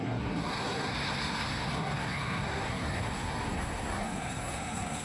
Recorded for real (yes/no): no